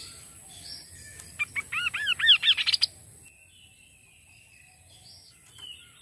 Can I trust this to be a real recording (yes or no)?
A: yes